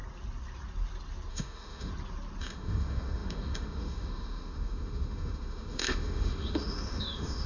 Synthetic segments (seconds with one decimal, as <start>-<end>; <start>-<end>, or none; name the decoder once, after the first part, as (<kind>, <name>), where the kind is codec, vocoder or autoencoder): 1.3-1.9 (autoencoder, DAC-VAE); 2.4-7.5